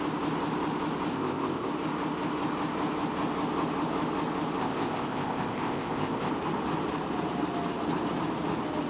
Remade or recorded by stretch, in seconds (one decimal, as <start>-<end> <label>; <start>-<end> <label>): 0.0-1.1 recorded; 1.1-1.7 remade; 1.7-4.6 recorded; 4.6-6.3 remade; 6.3-8.9 recorded